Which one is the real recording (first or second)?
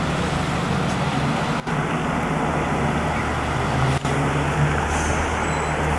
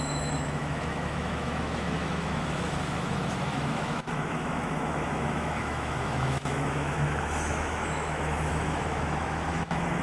first